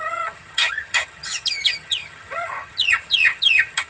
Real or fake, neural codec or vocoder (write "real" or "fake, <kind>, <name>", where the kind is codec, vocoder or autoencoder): fake, vocoder, HiFi-GAN